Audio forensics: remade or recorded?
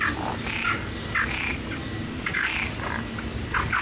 recorded